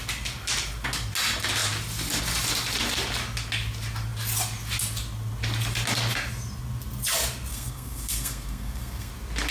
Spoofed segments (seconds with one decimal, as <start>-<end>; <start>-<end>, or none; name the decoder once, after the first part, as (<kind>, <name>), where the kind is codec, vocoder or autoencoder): 7.5-9.1 (codec, SNAC)